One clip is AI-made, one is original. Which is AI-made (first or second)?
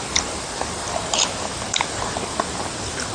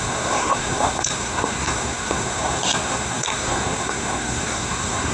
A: second